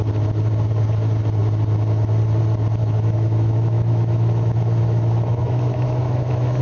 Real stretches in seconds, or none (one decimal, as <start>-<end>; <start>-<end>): 0.0-2.8